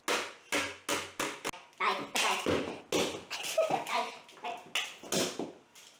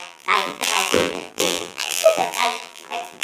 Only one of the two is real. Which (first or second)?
first